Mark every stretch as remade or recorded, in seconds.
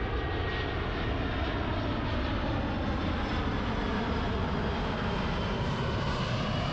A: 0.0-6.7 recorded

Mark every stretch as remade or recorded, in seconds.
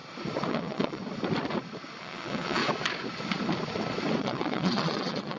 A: 0.0-0.5 recorded; 0.5-1.0 remade; 1.0-2.0 recorded; 2.0-2.6 remade; 2.6-4.2 recorded; 4.2-5.4 remade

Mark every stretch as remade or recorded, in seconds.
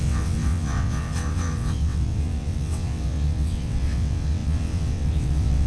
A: 0.0-5.7 remade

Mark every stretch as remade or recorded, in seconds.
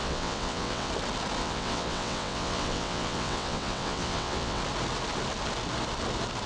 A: 0.0-0.9 remade; 0.9-1.4 recorded; 1.4-4.6 remade; 4.6-6.5 recorded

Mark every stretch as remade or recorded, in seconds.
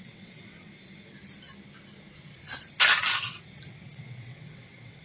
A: 0.0-0.7 remade; 0.7-3.7 recorded; 3.7-5.0 remade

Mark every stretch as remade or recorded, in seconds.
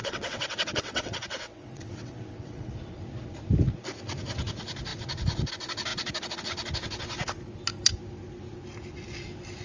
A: 0.0-2.7 remade; 2.7-9.6 recorded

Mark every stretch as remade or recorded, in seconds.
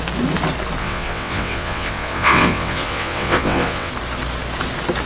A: 0.0-0.8 recorded; 0.8-3.9 remade; 3.9-5.1 recorded